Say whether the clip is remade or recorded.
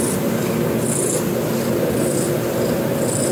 recorded